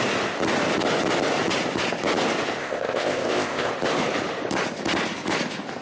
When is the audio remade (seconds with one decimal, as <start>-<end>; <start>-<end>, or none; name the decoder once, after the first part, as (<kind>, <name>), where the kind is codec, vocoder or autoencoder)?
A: 2.6-3.7 (codec, ZipCodec)